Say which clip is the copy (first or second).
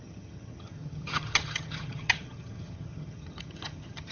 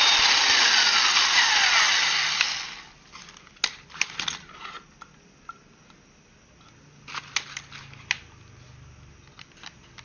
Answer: first